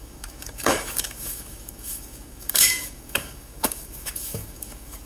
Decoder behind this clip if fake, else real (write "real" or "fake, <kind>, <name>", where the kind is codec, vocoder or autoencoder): fake, codec, DAC